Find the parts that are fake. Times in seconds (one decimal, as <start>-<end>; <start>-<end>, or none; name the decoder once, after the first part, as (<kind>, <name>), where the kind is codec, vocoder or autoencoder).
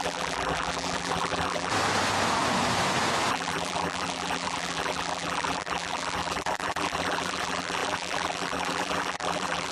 0.0-1.7 (vocoder, BigVGAN v2); 3.3-9.7